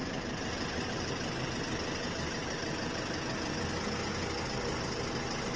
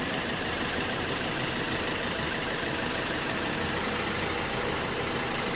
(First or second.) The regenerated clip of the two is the second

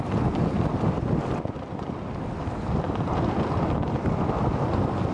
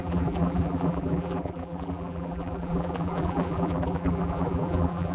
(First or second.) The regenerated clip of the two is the second